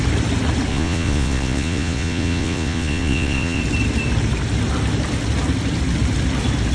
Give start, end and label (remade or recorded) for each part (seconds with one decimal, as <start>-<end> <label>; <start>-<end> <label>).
0.0-0.7 recorded; 0.7-3.6 remade; 3.6-6.7 recorded